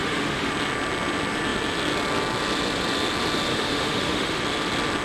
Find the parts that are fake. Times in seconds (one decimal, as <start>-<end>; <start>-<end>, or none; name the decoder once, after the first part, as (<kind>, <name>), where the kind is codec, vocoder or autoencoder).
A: 0.0-0.5 (autoencoder, DAC-VAE); 3.5-4.4